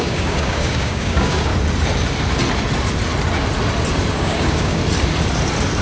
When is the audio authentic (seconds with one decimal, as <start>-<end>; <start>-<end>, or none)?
1.5-4.1; 4.8-5.8